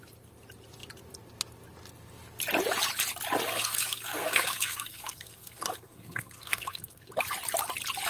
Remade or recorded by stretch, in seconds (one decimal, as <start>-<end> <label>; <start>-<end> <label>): 0.0-3.5 recorded; 3.5-7.1 remade; 7.1-8.1 recorded